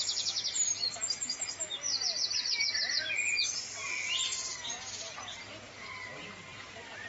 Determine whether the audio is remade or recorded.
recorded